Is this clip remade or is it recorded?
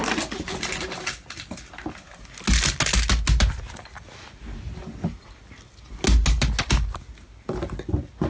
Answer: recorded